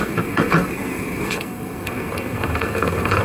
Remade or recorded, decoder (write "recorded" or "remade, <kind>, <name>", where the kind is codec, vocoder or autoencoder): remade, codec, SNAC